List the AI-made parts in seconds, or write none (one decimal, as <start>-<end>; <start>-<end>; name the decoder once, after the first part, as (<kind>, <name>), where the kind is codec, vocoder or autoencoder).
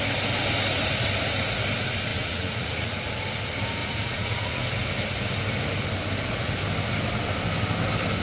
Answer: 2.1-3.1 (vocoder, Vocos); 3.8-4.6